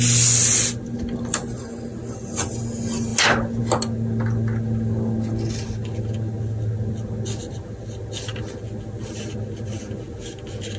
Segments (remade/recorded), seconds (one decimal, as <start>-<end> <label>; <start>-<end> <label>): 0.0-10.8 recorded